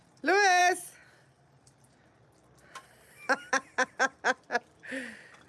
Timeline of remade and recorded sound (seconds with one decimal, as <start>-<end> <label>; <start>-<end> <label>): 0.0-5.5 recorded